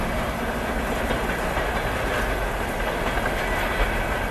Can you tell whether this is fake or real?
real